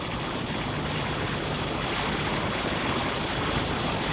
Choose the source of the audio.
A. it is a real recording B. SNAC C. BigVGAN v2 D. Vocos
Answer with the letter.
A